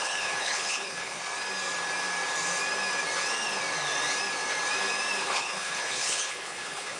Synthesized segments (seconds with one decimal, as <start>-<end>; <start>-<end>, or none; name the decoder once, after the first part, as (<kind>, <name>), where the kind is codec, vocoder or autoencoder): 0.0-1.2 (codec, HILCodec); 5.2-7.0